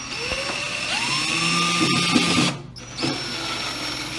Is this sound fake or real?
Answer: real